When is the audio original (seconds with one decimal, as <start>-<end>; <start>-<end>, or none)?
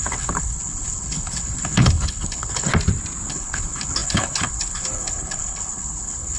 2.7-3.3